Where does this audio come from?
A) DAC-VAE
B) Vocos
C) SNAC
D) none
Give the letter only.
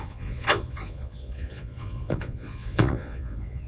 B